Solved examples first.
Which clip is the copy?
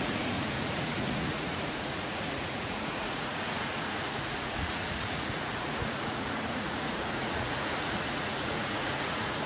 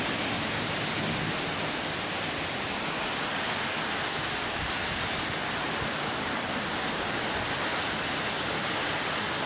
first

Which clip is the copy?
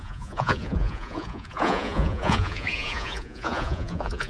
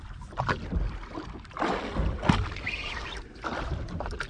first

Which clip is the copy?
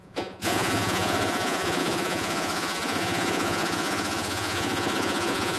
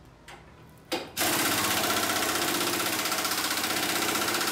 first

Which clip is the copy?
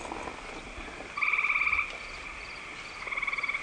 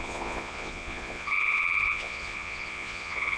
second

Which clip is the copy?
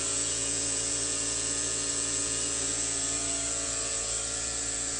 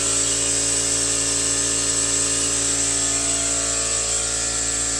first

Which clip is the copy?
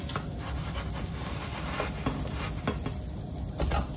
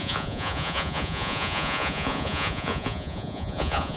second